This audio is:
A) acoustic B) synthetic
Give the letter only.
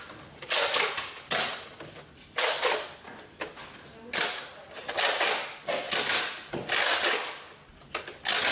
A